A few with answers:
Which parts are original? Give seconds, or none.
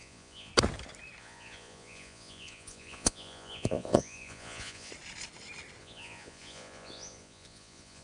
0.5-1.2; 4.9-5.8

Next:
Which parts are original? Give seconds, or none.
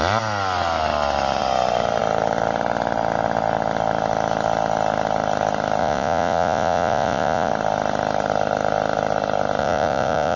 0.0-5.8; 7.5-9.6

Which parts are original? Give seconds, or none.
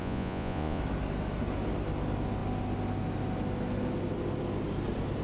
0.8-5.2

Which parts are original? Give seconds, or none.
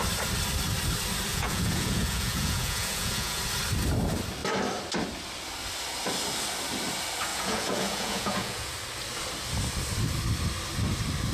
0.0-1.3; 3.4-7.3; 8.7-11.3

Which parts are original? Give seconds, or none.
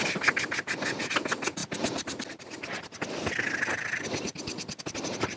0.0-5.4